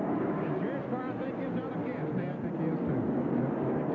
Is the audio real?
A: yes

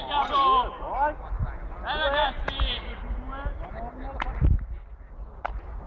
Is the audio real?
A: yes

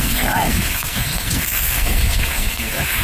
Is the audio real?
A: no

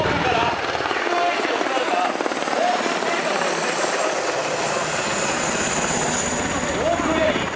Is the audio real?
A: yes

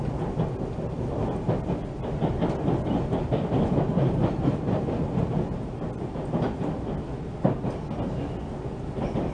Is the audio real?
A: yes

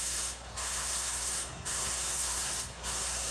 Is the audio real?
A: no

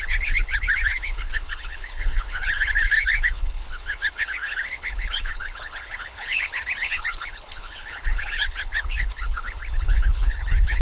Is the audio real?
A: no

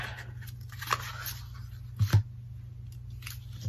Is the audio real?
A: yes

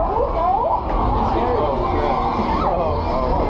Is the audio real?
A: yes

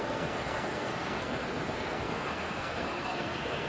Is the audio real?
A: no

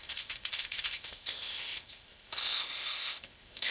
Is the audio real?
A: no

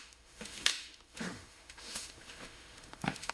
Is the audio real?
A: no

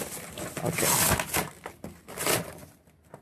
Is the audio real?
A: yes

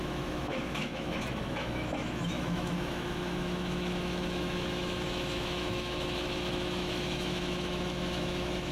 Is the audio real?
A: no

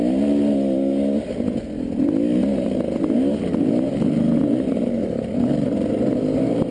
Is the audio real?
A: yes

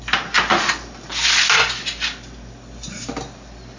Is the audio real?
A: yes